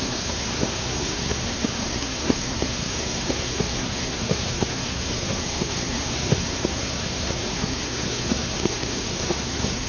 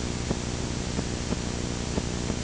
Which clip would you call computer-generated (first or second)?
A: first